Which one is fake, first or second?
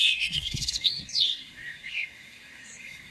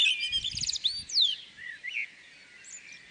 first